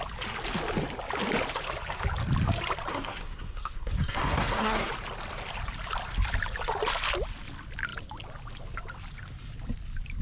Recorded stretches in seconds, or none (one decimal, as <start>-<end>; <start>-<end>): 0.0-2.9; 4.9-10.2